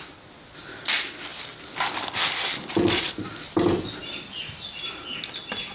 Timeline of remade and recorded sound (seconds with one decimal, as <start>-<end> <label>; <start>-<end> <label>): 0.0-5.7 recorded